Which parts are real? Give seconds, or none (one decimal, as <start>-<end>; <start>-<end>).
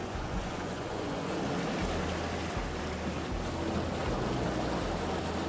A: 1.4-5.5